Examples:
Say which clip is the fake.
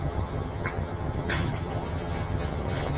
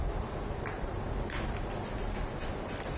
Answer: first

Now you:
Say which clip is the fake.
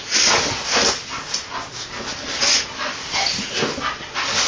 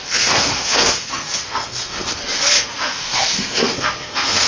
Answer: second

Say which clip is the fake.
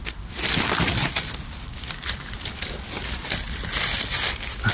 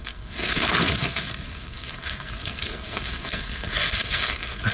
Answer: second